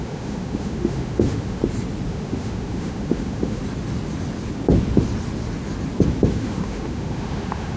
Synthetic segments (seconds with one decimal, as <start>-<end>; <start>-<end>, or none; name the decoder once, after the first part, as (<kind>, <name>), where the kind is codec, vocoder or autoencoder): 0.0-1.6 (autoencoder, DAC-VAE); 2.1-3.6; 6.3-7.8